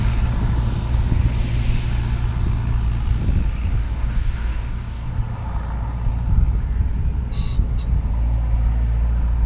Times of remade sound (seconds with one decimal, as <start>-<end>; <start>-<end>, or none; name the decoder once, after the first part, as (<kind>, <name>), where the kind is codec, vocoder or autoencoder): 3.8-5.1 (codec, DAC)